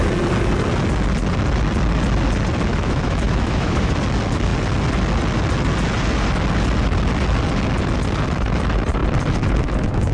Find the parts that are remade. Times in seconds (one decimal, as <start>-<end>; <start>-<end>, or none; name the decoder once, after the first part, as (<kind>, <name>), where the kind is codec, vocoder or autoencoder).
2.7-3.9 (autoencoder, DAC-VAE)

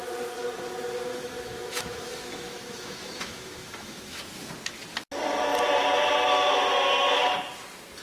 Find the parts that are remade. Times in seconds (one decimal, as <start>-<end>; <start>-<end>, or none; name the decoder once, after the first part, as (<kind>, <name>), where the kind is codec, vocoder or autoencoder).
1.1-4.2 (autoencoder, DAC-VAE)

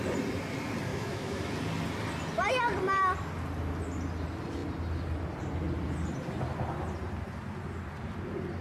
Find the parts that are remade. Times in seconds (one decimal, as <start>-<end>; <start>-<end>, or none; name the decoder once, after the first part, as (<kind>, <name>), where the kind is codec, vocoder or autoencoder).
0.9-1.5 (autoencoder, DAC-VAE)

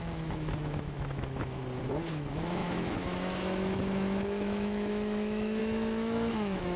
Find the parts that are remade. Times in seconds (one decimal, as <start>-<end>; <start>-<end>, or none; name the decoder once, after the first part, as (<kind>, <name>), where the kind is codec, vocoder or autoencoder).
0.0-1.6 (autoencoder, DAC-VAE); 2.1-6.8

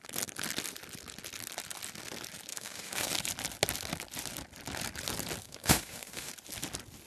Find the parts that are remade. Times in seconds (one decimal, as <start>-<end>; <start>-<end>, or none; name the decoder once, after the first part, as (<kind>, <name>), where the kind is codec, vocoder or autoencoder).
2.5-3.1 (autoencoder, DAC-VAE); 5.4-6.3